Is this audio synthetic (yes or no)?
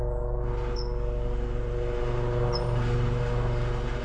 no